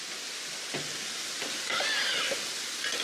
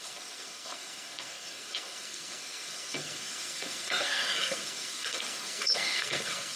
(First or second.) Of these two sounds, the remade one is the second